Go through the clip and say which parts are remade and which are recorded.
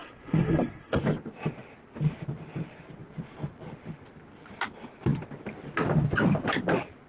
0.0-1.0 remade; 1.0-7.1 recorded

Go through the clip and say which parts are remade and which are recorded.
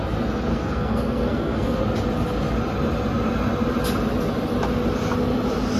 0.0-0.5 recorded; 0.5-1.8 remade; 1.8-5.8 recorded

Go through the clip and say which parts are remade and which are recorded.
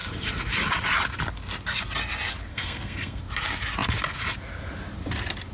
0.0-2.5 recorded; 2.5-3.2 remade; 3.2-5.5 recorded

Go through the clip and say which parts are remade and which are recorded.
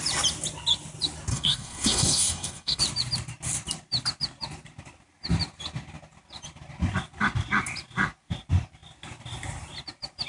0.0-1.3 recorded; 1.3-2.8 remade; 2.8-10.3 recorded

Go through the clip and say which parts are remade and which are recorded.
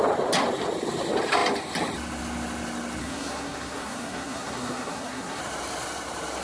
0.0-3.0 recorded; 3.0-5.4 remade; 5.4-6.4 recorded